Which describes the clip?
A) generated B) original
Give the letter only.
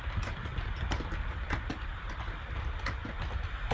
B